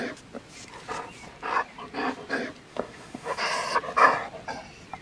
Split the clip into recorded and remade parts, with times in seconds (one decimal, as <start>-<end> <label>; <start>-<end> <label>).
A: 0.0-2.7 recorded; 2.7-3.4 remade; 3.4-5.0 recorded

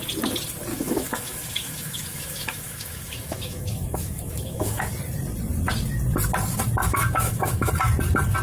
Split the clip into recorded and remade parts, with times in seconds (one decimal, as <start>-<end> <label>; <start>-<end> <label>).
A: 0.0-0.7 recorded; 0.7-4.9 remade; 4.9-6.8 recorded; 6.8-7.7 remade; 7.7-8.4 recorded

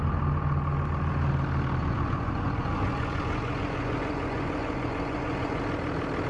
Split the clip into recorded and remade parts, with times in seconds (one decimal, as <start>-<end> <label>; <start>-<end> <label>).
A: 0.0-1.8 recorded; 1.8-5.6 remade; 5.6-6.3 recorded

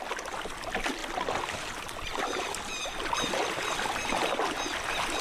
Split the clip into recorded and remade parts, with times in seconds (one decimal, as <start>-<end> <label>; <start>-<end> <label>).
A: 0.0-5.2 recorded

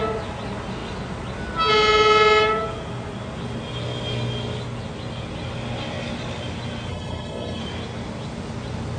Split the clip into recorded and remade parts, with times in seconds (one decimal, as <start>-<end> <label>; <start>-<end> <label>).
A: 0.0-6.9 recorded; 6.9-7.6 remade; 7.6-9.0 recorded